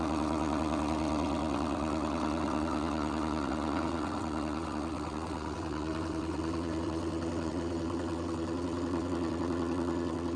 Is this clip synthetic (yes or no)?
yes